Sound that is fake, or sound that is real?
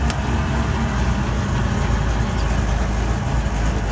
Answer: real